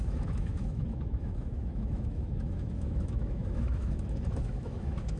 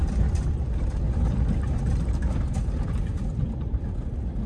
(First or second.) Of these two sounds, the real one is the second